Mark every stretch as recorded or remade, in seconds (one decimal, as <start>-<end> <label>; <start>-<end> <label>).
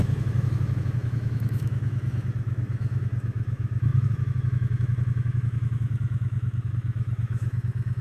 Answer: 0.0-8.0 remade